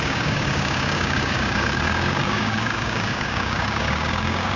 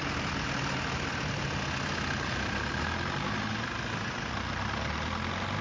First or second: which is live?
second